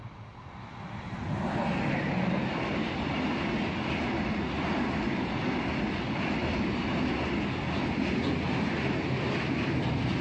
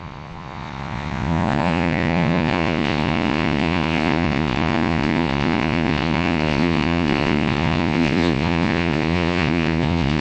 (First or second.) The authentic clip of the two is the first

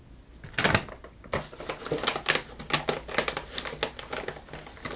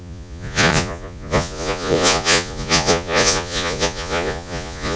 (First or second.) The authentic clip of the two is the first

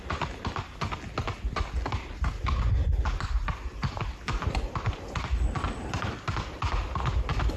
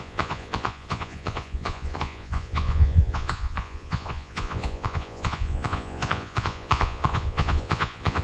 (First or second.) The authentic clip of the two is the first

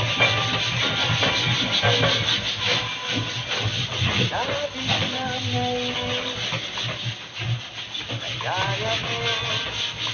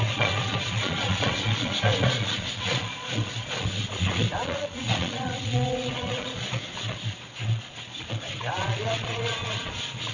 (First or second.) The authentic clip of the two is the first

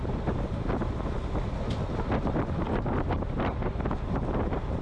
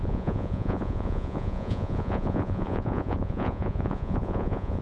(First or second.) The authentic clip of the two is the first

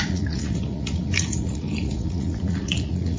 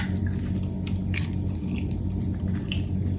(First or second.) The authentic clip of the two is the second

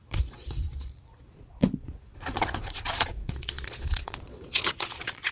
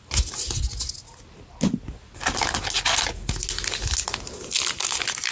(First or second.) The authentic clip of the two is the second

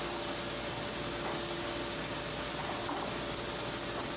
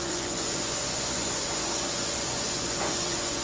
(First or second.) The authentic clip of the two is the first